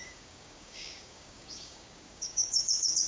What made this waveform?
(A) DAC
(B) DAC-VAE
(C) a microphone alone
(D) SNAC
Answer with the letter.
A